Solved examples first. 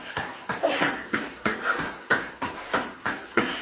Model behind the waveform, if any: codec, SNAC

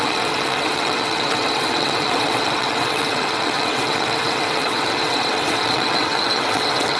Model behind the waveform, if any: vocoder, WaveNeXt